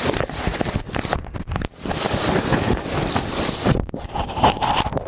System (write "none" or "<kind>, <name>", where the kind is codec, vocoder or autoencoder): vocoder, BigVGAN v2